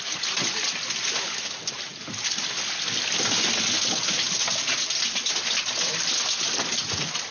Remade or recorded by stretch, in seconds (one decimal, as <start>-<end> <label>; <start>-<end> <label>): 0.0-7.3 recorded